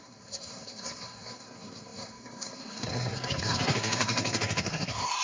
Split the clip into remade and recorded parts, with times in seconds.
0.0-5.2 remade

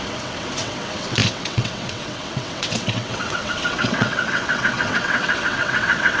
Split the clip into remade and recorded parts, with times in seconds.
0.0-6.2 remade

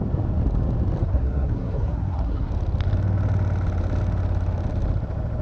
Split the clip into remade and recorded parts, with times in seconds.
0.0-1.0 recorded; 1.0-2.5 remade; 2.5-5.4 recorded

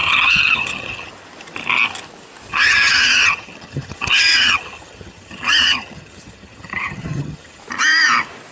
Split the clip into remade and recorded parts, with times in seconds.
0.0-1.1 remade; 1.1-2.5 recorded; 2.5-7.6 remade; 7.6-8.5 recorded

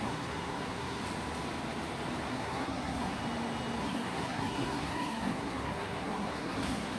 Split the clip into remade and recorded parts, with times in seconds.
0.0-1.0 remade; 1.0-2.3 recorded; 2.3-3.2 remade; 3.2-3.8 recorded; 3.8-7.0 remade

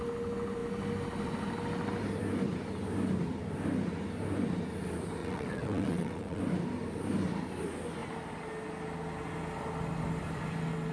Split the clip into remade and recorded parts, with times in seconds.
0.0-5.2 recorded; 5.2-6.4 remade; 6.4-10.9 recorded